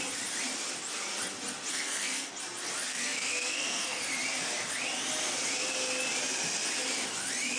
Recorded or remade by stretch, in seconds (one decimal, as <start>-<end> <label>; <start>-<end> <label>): 0.0-1.7 recorded; 1.7-2.3 remade; 2.3-2.9 recorded; 2.9-4.0 remade; 4.0-7.6 recorded